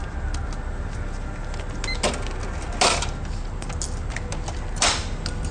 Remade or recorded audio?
recorded